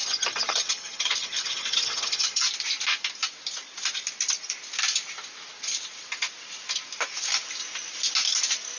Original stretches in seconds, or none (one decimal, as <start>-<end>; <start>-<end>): 2.4-8.8

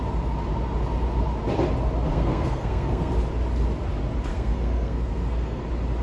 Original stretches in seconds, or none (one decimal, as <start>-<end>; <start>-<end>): 0.0-2.1; 3.1-4.3; 5.6-6.0

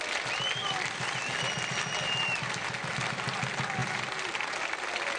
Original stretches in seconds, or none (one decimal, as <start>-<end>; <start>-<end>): 0.0-5.2

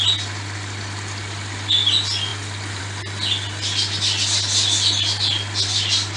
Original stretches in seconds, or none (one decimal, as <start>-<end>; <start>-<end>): 0.0-6.2